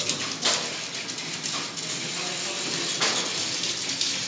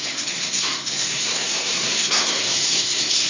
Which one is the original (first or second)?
first